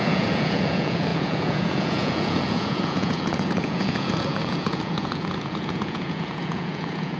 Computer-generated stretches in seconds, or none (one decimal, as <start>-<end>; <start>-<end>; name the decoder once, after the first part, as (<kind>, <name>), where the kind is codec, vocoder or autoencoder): 0.0-7.2 (vocoder, Vocos)